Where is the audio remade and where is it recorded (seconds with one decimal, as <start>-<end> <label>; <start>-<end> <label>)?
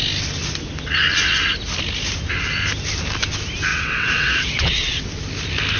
0.0-3.7 recorded; 3.7-5.1 remade; 5.1-5.8 recorded